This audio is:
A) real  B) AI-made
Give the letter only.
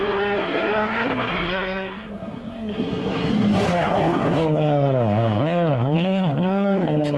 B